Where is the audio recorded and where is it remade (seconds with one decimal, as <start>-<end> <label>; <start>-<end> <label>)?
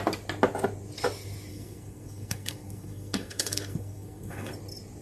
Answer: 0.0-1.5 recorded; 1.5-4.5 remade; 4.5-5.0 recorded